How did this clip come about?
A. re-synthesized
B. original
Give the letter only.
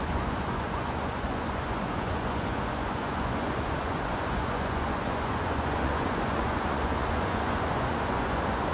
A